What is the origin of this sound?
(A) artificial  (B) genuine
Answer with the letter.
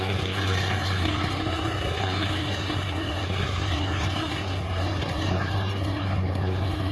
A